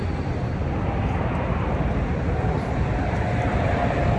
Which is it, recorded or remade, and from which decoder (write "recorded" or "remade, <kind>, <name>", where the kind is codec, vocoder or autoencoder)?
recorded